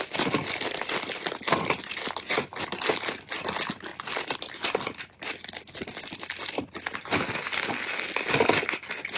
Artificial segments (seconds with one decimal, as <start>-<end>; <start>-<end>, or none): none